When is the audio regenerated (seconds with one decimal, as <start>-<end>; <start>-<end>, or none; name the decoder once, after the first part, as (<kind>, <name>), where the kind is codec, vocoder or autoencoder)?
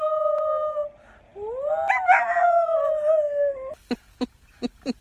none